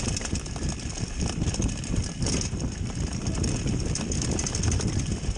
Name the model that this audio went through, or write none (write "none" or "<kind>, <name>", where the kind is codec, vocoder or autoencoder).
vocoder, BigVGAN v2